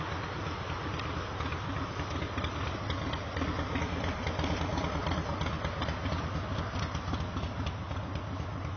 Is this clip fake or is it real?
real